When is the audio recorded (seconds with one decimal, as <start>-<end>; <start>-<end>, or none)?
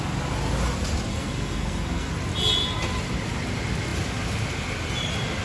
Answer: 0.0-1.1; 2.1-5.4